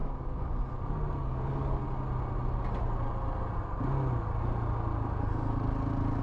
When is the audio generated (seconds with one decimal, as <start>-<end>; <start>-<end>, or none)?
0.0-0.5; 1.2-1.8